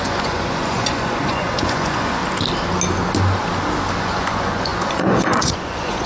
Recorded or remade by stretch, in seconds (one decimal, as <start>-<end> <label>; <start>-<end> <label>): 0.0-2.2 remade; 2.2-4.0 recorded; 4.0-6.1 remade